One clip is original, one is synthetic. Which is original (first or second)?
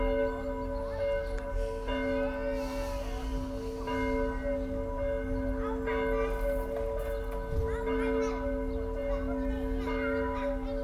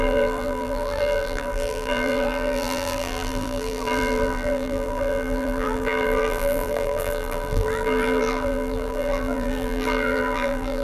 first